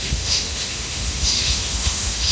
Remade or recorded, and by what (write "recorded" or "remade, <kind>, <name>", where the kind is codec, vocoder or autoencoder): remade, autoencoder, DAC-VAE